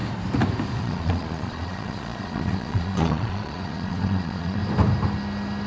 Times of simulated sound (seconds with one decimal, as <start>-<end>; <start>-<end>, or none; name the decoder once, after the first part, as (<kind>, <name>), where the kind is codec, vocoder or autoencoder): 0.8-4.6 (vocoder, Vocos)